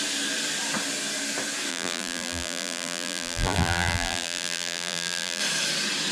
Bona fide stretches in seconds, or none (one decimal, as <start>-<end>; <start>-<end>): 0.0-1.7; 5.4-6.1